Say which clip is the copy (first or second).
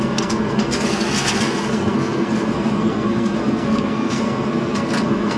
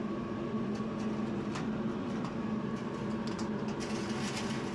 first